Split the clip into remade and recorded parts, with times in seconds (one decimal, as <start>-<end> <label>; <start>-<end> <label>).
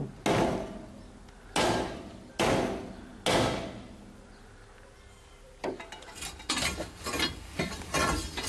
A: 0.0-8.5 recorded